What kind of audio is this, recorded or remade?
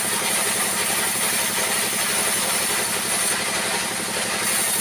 recorded